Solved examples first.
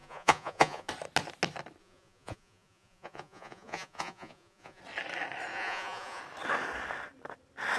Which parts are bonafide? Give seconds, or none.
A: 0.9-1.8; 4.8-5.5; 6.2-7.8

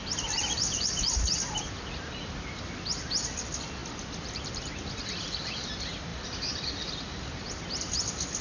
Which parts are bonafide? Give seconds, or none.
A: 0.0-8.4

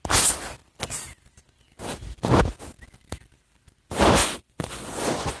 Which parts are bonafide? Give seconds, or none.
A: 0.0-4.2